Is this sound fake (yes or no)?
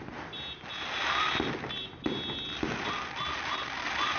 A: no